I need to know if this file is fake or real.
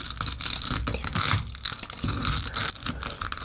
real